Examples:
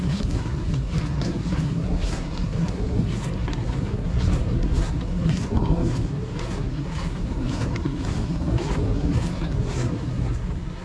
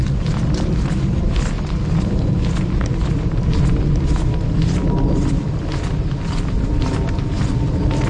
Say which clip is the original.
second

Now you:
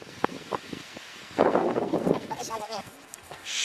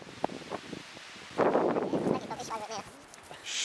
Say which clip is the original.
second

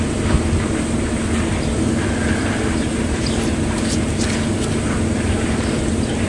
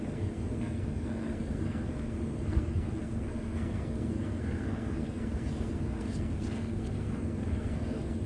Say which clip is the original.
first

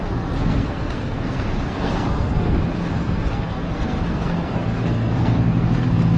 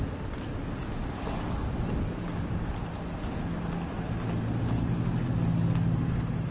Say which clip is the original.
second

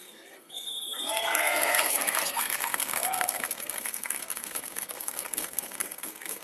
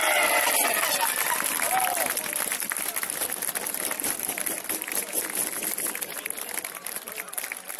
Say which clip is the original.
second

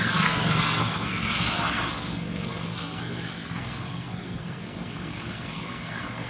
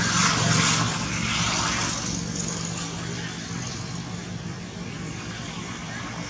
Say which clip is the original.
second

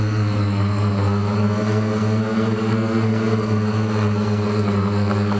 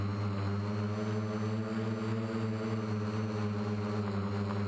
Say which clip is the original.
second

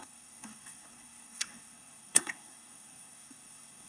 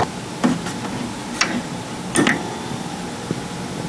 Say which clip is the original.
second